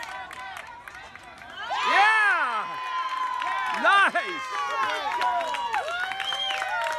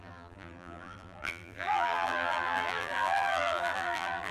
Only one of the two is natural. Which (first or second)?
first